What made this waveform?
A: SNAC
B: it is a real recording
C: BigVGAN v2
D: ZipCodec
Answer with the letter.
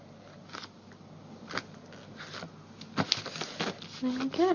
B